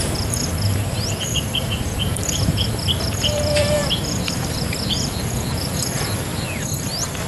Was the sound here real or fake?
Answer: fake